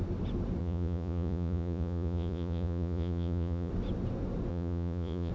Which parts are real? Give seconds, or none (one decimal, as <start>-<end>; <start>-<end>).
0.0-0.6; 3.7-4.5